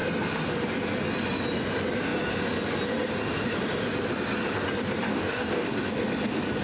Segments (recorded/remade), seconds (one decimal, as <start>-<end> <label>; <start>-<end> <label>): 0.0-5.1 recorded; 5.1-5.9 remade; 5.9-6.6 recorded